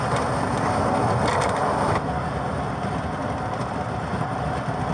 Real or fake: real